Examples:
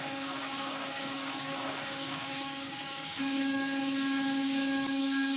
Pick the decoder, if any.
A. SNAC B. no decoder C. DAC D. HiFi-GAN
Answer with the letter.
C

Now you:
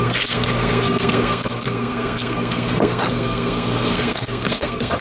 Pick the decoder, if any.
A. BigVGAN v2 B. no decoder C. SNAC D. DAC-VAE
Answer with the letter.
C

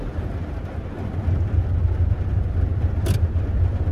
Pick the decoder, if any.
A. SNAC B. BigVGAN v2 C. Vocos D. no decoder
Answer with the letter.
D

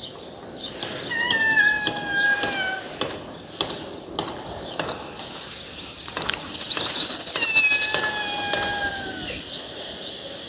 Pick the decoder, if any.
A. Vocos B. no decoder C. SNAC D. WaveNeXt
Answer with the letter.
B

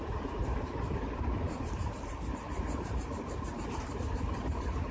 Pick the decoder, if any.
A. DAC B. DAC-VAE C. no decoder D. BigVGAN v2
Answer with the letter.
D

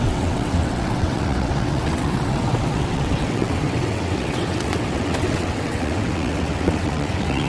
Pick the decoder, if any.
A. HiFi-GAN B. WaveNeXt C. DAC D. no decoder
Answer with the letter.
B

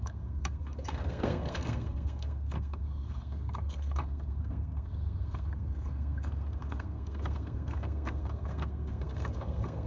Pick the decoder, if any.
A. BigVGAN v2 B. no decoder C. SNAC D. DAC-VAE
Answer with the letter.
C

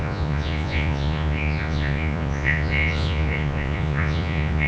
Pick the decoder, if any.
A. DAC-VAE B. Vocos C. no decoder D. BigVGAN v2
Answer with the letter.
B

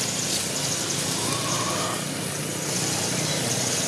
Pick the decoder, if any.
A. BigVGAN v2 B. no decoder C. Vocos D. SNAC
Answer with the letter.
B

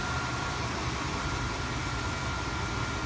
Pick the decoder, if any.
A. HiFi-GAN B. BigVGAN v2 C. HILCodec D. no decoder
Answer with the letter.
D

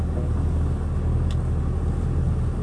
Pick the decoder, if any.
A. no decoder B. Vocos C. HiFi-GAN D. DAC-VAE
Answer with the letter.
A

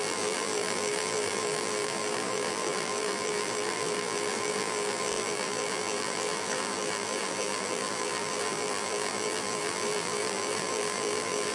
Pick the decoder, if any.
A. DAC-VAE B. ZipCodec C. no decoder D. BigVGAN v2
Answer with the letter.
D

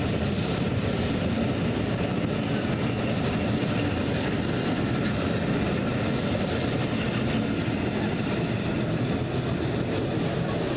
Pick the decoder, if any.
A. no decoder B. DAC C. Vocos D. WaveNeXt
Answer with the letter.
A